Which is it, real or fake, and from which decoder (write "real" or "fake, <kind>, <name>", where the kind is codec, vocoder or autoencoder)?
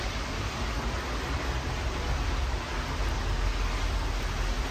real